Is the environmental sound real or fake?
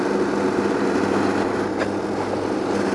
real